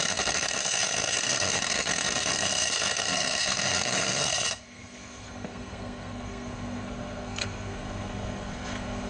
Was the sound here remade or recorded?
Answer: remade